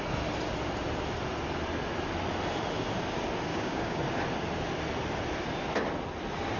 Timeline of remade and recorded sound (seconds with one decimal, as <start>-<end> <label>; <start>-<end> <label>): 0.0-3.5 recorded; 3.5-4.0 remade; 4.0-6.6 recorded